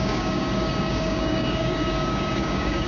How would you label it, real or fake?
fake